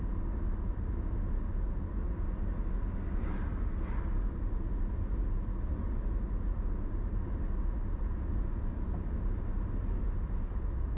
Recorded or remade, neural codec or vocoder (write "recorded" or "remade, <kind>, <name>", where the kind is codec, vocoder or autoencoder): recorded